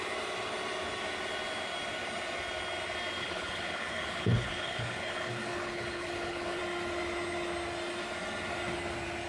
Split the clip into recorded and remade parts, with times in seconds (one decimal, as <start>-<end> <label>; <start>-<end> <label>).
0.0-3.2 recorded; 3.2-6.6 remade; 6.6-9.3 recorded